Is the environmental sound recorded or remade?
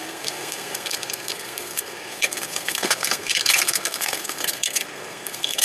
remade